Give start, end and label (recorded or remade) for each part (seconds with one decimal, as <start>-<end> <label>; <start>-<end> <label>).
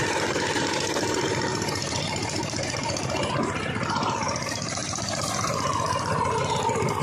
0.0-7.0 remade